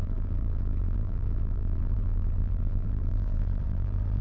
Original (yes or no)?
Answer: no